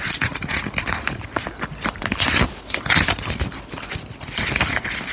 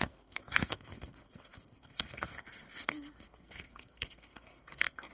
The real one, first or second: first